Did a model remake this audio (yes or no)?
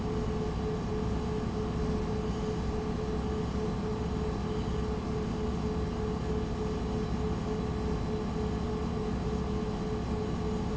no